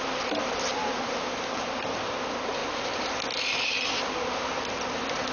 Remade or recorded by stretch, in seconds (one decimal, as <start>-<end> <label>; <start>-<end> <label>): 0.0-5.3 recorded